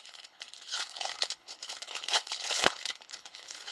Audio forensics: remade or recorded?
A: remade